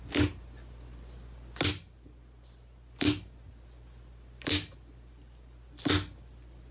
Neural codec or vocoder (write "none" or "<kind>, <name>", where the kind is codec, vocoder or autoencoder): none